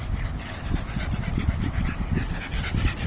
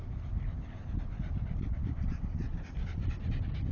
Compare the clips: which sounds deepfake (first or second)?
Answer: first